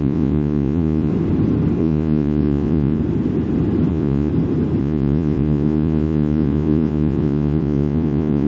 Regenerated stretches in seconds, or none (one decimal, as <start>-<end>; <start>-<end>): 0.0-1.1; 1.8-3.0; 3.9-4.3; 4.8-8.5